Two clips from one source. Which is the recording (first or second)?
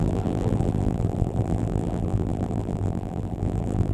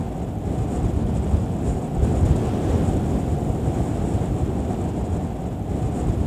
second